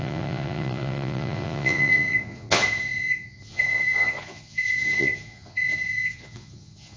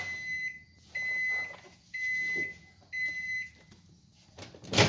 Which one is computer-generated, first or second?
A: first